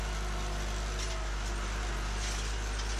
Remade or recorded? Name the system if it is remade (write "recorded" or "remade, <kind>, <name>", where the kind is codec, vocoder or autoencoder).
recorded